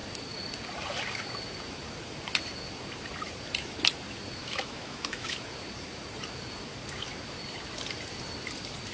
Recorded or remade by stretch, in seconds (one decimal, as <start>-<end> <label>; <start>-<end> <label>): 0.0-4.4 recorded; 4.4-5.4 remade; 5.4-8.9 recorded